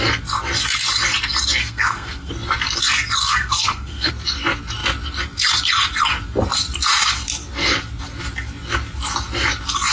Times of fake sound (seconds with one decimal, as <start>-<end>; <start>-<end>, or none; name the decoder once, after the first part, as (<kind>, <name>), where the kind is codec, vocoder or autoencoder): 1.6-2.3 (codec, SNAC); 3.2-4.1

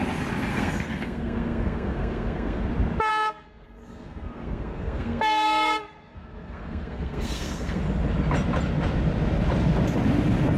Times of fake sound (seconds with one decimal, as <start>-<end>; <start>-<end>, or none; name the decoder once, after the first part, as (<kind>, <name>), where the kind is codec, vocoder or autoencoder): 0.5-2.7 (codec, SNAC); 3.1-7.8

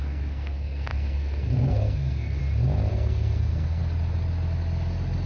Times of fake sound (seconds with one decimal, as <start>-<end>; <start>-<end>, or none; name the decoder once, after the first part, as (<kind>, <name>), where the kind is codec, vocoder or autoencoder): 0.0-2.4 (codec, SNAC); 2.9-3.8

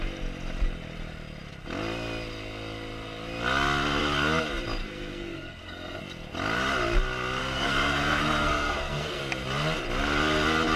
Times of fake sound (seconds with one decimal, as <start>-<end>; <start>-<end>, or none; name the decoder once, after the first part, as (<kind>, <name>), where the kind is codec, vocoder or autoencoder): 4.8-6.0 (codec, SNAC); 7.4-9.2

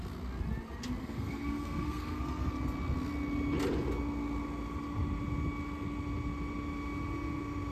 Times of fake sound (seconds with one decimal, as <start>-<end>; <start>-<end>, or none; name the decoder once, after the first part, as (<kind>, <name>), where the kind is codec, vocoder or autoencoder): 1.0-2.5 (codec, SNAC)